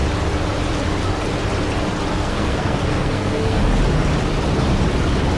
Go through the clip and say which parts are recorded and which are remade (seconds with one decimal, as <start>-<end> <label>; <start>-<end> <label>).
0.0-2.1 recorded; 2.1-3.6 remade; 3.6-5.4 recorded